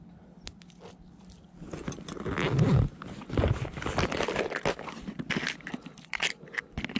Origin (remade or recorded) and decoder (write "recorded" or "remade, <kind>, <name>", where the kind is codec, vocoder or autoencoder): recorded